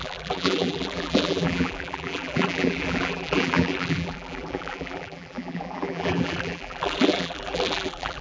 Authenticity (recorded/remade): remade